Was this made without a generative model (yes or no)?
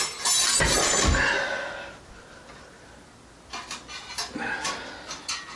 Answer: yes